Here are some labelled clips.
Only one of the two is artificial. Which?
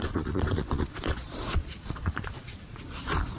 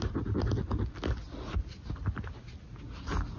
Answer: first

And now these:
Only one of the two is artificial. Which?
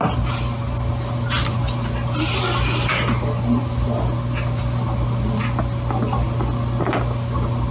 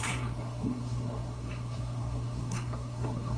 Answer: second